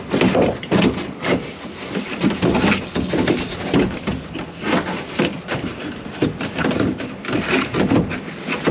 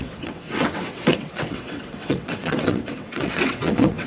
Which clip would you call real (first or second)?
first